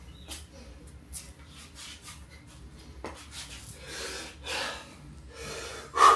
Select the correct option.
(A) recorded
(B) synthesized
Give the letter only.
A